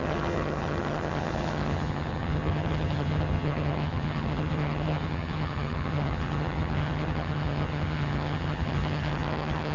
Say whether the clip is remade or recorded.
remade